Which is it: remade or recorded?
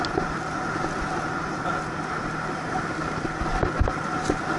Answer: recorded